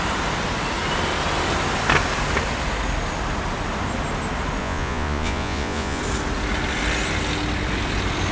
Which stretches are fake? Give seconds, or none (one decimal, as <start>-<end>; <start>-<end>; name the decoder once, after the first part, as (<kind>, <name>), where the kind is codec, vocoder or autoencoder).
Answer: 4.6-6.0 (vocoder, Vocos)